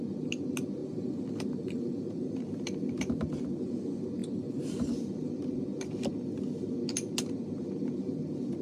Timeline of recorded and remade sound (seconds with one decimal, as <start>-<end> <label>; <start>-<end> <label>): 0.0-0.8 recorded; 0.8-2.4 remade; 2.4-4.2 recorded; 4.2-4.9 remade; 4.9-8.6 recorded

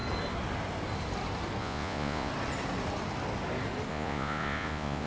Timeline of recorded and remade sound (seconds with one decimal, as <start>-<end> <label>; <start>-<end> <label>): 0.0-1.6 recorded; 1.6-2.3 remade; 2.3-3.9 recorded; 3.9-5.1 remade

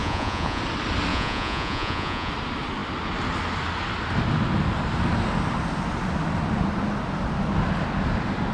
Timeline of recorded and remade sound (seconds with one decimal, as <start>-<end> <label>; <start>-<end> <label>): 0.0-0.6 remade; 0.6-1.1 recorded; 1.1-2.3 remade; 2.3-8.5 recorded

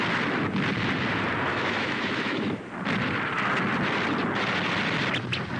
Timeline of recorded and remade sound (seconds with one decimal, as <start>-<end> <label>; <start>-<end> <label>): 0.0-1.5 recorded; 1.5-2.6 remade; 2.6-5.6 recorded

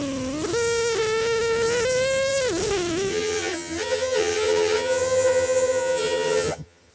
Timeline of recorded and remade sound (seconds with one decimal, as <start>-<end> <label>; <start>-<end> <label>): 0.0-3.1 recorded; 3.1-6.9 remade

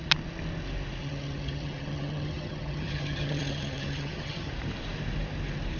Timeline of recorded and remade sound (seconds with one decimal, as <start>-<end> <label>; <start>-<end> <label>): 0.0-1.0 recorded; 1.0-4.5 remade; 4.5-5.8 recorded